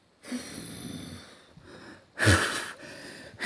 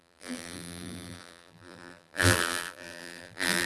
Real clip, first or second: first